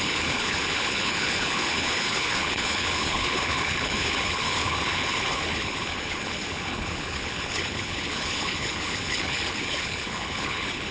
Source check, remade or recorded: remade